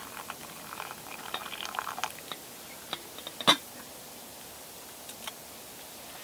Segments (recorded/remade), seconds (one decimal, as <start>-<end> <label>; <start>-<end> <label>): 0.0-6.2 recorded